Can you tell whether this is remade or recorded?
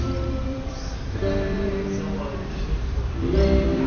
remade